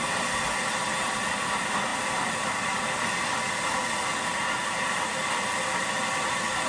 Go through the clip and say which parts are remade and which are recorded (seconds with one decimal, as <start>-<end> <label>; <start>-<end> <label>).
0.0-6.7 recorded